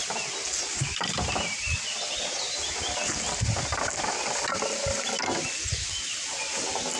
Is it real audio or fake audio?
real